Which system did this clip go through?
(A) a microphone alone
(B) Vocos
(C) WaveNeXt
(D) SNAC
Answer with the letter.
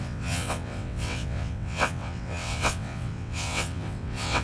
C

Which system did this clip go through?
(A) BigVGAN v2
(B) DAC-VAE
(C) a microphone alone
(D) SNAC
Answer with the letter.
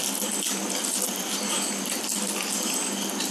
C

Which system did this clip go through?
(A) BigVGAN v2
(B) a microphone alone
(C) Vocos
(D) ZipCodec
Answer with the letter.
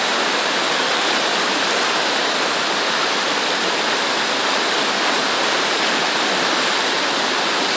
B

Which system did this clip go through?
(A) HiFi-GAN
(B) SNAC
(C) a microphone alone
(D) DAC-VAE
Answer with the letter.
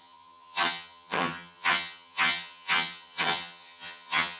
A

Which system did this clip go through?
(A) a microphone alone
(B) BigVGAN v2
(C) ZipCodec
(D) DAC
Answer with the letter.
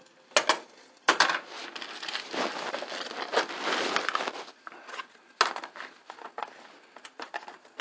A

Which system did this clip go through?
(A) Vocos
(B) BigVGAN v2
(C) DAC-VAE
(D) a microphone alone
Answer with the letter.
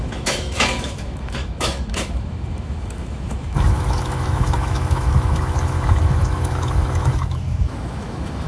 C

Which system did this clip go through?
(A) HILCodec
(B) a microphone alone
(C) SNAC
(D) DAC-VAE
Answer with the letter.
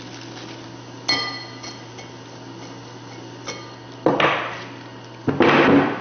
B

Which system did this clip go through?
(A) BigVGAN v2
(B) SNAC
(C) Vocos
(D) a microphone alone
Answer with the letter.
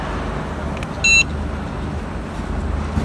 D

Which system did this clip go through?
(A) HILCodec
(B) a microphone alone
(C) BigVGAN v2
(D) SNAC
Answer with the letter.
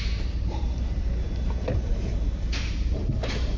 C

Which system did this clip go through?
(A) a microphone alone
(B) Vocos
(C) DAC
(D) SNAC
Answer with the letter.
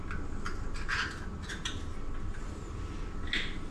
A